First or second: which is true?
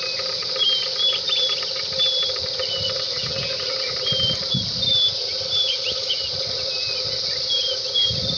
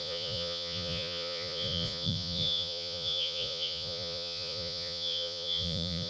first